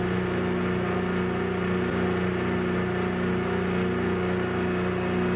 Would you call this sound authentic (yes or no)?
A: yes